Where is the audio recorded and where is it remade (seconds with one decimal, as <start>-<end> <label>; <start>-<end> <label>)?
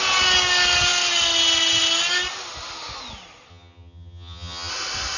0.0-3.5 recorded; 3.5-4.7 remade; 4.7-5.2 recorded